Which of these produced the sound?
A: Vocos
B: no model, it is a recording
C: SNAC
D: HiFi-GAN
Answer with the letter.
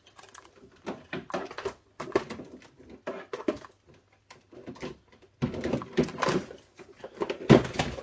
B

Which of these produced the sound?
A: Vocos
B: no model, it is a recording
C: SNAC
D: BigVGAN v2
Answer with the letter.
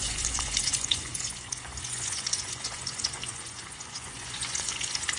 A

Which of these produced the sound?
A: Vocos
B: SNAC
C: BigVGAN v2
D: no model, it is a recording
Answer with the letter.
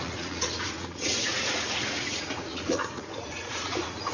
A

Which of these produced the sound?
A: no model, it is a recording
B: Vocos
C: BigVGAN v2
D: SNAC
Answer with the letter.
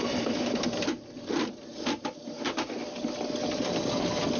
A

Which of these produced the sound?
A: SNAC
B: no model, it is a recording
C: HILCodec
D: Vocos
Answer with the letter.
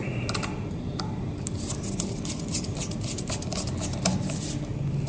B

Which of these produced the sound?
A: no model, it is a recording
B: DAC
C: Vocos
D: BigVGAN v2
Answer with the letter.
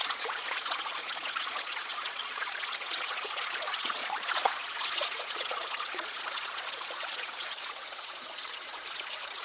C